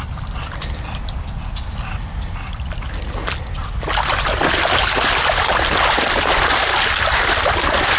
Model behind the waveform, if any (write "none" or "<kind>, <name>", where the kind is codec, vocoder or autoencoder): none